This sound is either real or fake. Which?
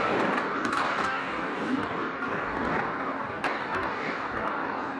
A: fake